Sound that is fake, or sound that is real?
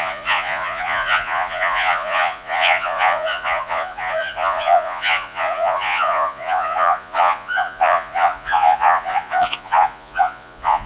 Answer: fake